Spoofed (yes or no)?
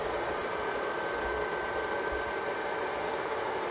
no